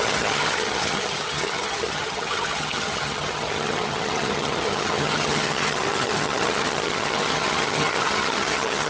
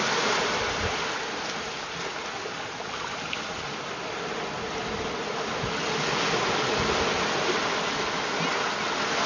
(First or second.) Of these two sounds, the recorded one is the second